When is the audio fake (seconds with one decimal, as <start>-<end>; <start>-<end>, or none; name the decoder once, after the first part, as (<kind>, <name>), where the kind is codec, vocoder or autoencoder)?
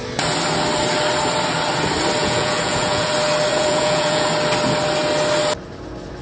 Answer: 2.2-3.1 (vocoder, Vocos); 3.5-4.3